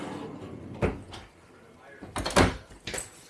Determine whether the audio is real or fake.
real